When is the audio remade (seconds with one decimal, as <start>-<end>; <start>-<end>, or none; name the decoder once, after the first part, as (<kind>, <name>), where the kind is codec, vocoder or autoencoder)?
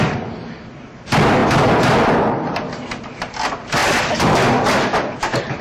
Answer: 3.8-4.6 (vocoder, BigVGAN v2)